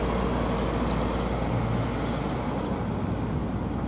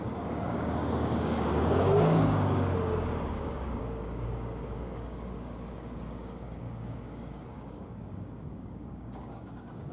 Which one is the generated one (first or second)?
second